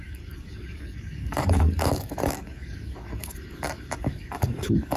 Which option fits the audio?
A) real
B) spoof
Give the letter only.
B